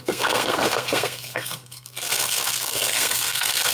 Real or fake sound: fake